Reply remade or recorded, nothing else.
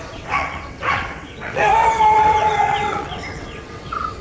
remade